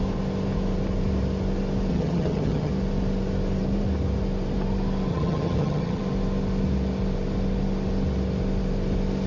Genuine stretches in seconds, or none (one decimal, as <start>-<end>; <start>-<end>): 0.0-1.9; 2.7-5.1; 6.0-9.3

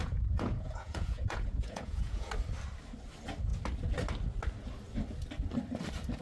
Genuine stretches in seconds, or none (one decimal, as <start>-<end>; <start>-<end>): 2.3-6.2

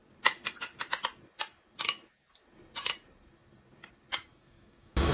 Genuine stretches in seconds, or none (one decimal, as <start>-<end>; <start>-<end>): 0.0-4.3